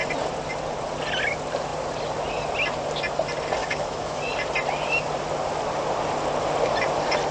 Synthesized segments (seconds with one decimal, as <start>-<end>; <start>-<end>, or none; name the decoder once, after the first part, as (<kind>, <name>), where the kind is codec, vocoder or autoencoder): 3.6-4.2 (autoencoder, DAC-VAE)